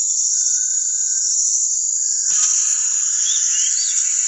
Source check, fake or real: fake